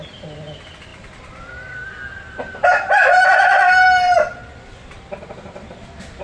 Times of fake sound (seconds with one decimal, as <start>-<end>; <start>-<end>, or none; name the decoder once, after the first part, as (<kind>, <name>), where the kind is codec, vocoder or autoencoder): 0.0-6.2 (vocoder, BigVGAN v2)